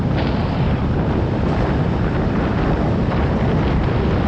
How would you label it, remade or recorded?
recorded